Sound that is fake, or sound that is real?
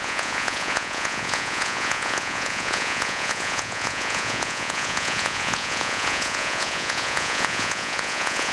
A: fake